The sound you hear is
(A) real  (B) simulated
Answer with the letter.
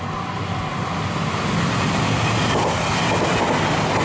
A